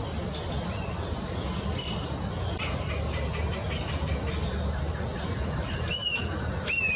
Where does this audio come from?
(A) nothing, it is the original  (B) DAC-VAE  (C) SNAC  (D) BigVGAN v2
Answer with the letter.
A